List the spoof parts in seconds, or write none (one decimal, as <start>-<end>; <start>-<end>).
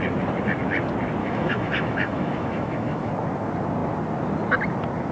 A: 1.2-3.1